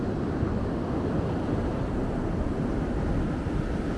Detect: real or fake real